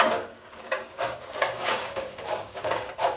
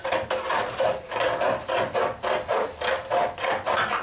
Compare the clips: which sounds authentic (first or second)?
second